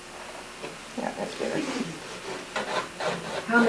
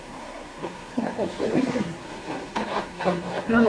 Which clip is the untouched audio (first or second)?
first